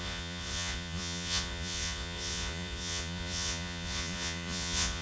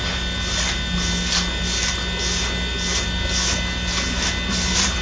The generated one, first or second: first